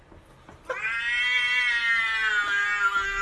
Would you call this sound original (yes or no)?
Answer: yes